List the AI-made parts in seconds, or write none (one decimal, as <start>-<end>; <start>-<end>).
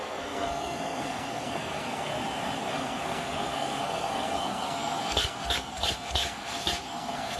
0.0-2.1; 2.6-7.4